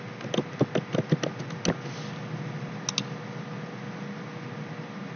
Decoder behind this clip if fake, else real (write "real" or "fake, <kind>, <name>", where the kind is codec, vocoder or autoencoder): real